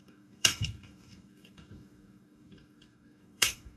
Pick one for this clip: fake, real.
fake